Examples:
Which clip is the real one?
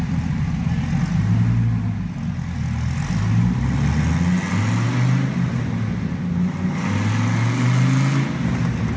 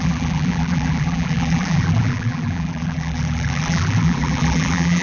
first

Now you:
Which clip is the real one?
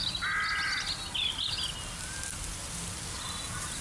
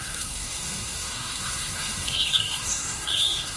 first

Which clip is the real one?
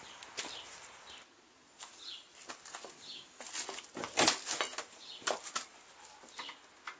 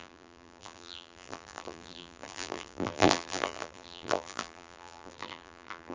first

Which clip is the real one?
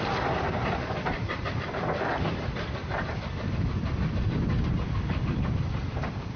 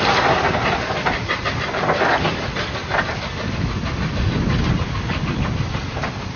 second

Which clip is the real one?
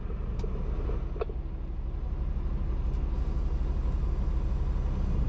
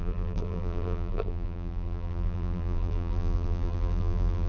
first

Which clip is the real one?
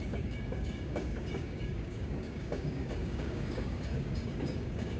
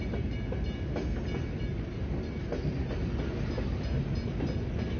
second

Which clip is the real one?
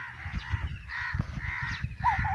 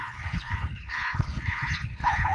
first